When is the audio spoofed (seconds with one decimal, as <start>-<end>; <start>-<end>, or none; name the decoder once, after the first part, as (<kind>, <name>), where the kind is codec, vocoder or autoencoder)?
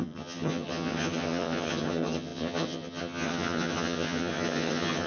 0.0-5.1 (vocoder, HiFi-GAN)